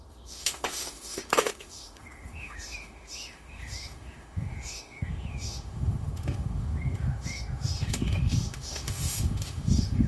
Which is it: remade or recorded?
remade